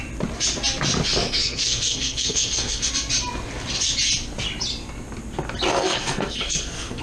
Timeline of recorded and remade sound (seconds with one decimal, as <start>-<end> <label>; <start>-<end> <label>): 0.0-1.2 recorded; 1.2-2.9 remade; 2.9-5.7 recorded; 5.7-7.0 remade